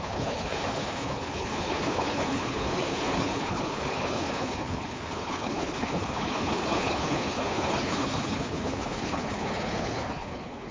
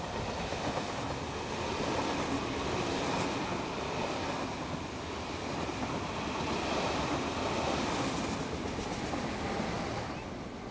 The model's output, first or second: first